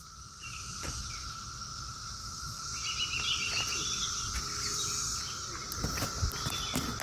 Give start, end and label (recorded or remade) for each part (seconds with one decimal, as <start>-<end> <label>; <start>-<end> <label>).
0.0-2.2 recorded; 2.2-2.8 remade; 2.8-7.0 recorded